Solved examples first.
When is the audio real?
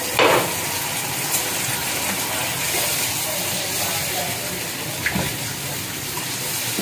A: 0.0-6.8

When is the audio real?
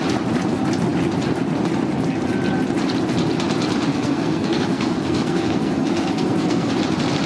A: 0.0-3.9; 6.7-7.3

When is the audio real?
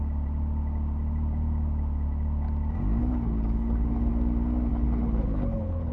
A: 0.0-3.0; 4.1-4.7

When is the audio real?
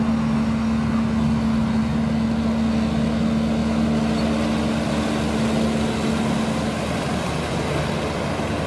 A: 0.0-8.7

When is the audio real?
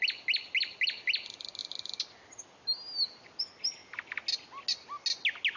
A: 0.0-5.6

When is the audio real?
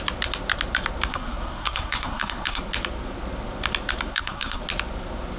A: 0.0-1.1; 2.6-4.1; 4.6-5.4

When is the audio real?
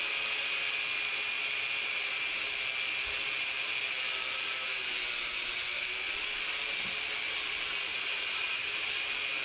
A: 0.0-7.9; 9.0-9.4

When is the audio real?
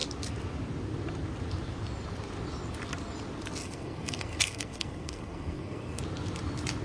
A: 0.0-3.6; 6.0-6.8